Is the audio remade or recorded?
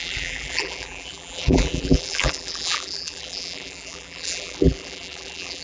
remade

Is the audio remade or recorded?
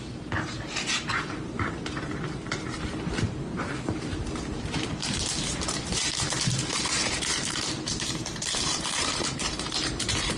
remade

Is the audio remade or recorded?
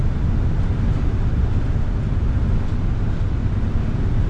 recorded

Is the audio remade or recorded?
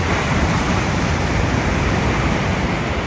remade